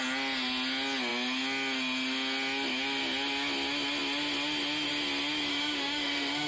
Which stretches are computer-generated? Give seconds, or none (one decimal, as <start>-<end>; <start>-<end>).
5.5-6.5